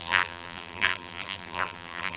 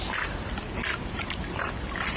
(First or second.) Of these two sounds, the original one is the second